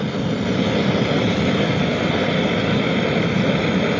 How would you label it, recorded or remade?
recorded